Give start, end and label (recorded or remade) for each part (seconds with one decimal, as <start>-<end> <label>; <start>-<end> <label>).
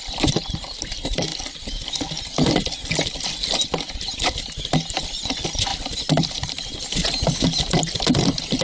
0.0-8.6 recorded